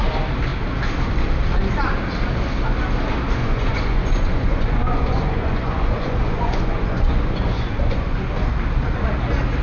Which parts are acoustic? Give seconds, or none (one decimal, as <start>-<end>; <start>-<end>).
0.0-3.4; 8.3-9.6